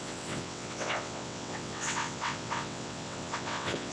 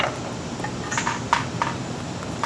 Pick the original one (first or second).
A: second